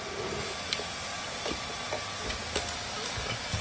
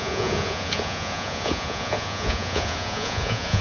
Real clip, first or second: first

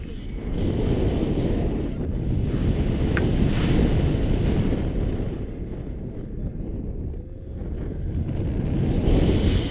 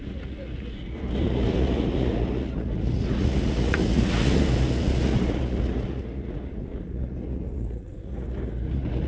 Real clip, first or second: first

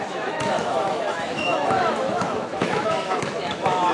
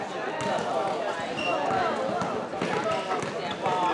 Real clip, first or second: second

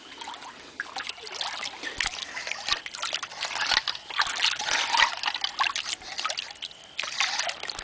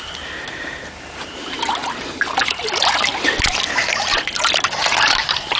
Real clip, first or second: first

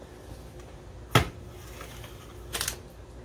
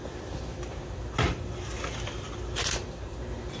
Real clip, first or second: first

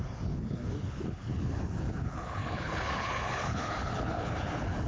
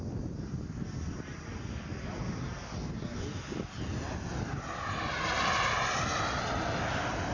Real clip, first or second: second